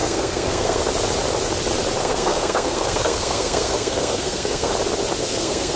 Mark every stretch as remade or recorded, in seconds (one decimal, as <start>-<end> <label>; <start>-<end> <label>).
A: 0.0-0.8 remade; 0.8-2.0 recorded; 2.0-4.7 remade; 4.7-5.2 recorded; 5.2-5.8 remade